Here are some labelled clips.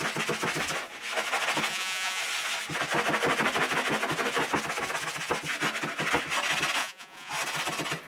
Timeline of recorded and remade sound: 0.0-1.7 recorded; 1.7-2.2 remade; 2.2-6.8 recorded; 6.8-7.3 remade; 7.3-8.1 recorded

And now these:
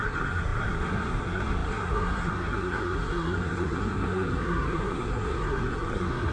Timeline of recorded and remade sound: 0.0-6.3 remade